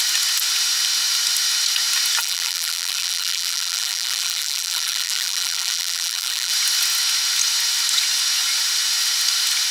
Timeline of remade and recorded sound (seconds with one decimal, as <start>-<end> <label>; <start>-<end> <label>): 0.0-2.2 recorded; 2.2-6.5 remade; 6.5-9.7 recorded